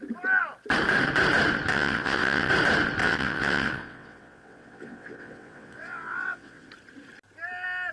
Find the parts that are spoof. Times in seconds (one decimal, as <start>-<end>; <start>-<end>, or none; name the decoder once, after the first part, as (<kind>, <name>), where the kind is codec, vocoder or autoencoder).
1.7-2.5 (vocoder, WaveNeXt); 3.0-6.7